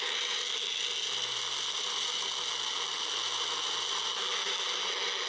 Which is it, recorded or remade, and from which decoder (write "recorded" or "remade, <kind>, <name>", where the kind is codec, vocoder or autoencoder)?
recorded